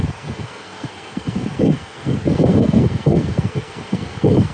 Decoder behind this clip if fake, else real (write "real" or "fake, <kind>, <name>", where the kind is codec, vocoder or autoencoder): fake, codec, SNAC